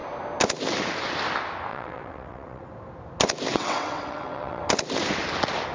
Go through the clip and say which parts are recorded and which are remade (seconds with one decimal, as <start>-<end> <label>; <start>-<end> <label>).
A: 0.0-1.7 recorded; 1.7-2.7 remade; 2.7-3.5 recorded; 3.5-4.6 remade; 4.6-5.7 recorded